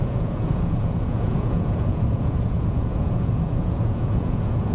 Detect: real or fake fake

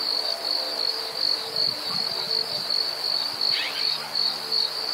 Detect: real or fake real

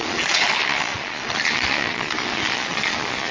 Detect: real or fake fake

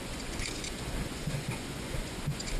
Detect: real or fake fake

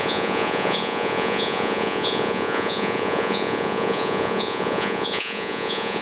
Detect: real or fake fake